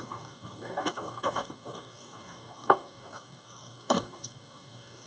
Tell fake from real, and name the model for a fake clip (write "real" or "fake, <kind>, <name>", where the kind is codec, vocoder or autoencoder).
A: fake, codec, DAC